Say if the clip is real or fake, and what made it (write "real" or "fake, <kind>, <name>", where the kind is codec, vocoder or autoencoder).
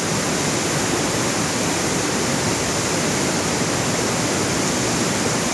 real